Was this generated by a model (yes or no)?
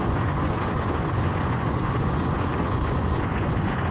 yes